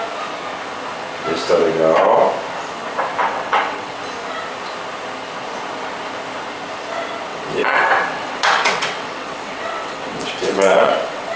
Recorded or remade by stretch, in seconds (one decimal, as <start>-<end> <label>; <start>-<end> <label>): 0.0-3.2 recorded; 3.2-4.0 remade; 4.0-7.3 recorded; 7.3-11.4 remade